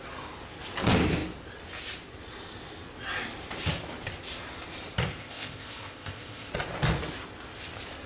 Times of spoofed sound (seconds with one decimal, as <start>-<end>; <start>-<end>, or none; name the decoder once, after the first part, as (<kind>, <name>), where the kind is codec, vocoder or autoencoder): 5.2-6.5 (codec, ZipCodec)